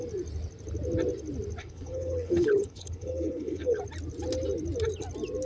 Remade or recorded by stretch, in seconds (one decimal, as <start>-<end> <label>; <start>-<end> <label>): 0.0-1.6 recorded; 1.6-3.8 remade; 3.8-5.5 recorded